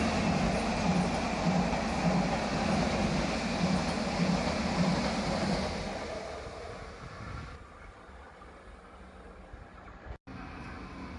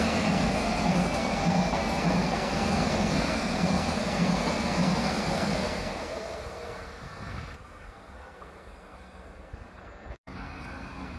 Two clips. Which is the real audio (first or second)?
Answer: first